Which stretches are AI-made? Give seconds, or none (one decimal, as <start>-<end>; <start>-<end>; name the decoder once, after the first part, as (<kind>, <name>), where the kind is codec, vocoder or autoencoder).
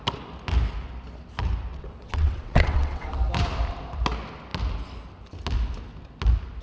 1.7-3.1 (vocoder, WaveNeXt)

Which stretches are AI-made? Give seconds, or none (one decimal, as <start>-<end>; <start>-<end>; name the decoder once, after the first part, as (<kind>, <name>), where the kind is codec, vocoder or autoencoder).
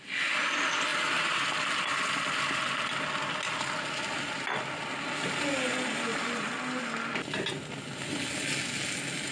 none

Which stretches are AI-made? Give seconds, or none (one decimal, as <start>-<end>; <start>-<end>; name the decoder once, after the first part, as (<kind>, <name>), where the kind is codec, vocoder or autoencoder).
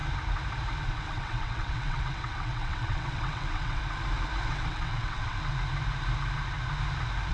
0.8-3.8 (vocoder, WaveNeXt); 4.4-5.5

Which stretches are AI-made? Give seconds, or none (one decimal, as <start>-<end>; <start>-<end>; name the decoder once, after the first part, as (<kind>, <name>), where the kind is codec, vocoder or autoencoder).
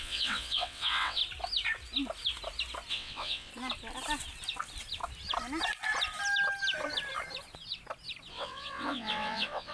0.0-1.2 (vocoder, WaveNeXt); 2.9-3.5; 8.3-9.7